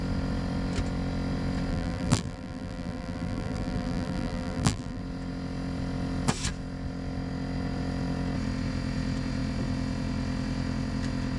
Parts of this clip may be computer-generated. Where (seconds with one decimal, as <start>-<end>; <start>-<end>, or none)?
1.7-5.0